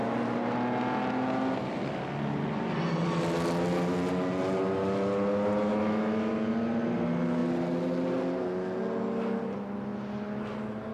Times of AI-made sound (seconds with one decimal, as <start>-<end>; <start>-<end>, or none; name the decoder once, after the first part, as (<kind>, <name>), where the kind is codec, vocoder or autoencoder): 5.7-6.3 (autoencoder, DAC-VAE)